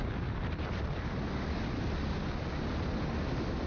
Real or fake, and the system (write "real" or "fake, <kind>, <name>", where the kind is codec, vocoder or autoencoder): fake, vocoder, BigVGAN v2